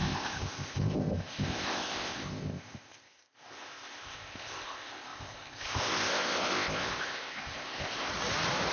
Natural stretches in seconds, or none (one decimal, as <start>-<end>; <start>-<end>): 8.1-8.7